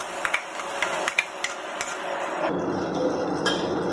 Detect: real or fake real